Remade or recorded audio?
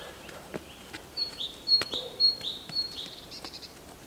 remade